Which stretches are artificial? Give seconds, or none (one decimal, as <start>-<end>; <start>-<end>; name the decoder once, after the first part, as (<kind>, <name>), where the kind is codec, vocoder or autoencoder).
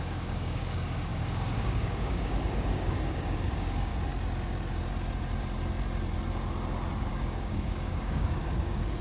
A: 0.0-3.9 (codec, DAC); 7.1-9.0